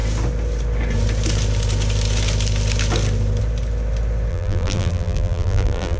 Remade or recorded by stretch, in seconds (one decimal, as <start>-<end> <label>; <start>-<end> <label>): 0.0-4.3 recorded; 4.3-6.0 remade